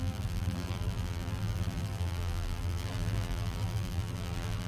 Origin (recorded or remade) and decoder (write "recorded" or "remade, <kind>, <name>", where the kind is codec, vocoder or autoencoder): remade, vocoder, BigVGAN v2